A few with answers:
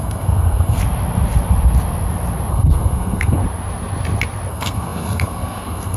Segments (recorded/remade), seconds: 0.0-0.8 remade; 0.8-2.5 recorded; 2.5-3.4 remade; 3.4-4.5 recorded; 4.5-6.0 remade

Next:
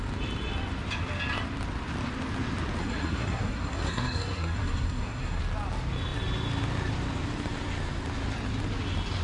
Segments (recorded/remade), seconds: 0.0-2.8 recorded; 2.8-5.4 remade; 5.4-9.2 recorded

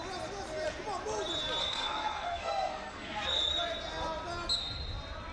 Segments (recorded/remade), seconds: 0.0-1.6 recorded; 1.6-3.5 remade; 3.5-5.3 recorded

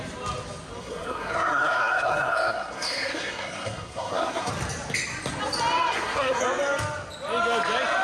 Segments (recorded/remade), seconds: 0.0-0.8 recorded; 0.8-4.5 remade; 4.5-5.9 recorded; 5.9-6.4 remade; 6.4-8.0 recorded